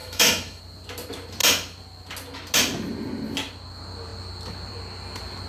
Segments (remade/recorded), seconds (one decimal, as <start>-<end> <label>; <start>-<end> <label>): 0.0-0.6 remade; 0.6-5.5 recorded